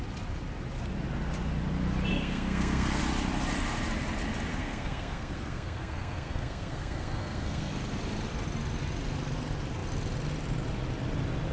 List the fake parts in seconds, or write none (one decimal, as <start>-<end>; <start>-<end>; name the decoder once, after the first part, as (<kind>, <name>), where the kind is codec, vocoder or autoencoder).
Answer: 2.1-3.0 (codec, SNAC); 4.5-7.7